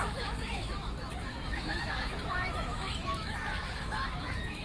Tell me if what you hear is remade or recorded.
remade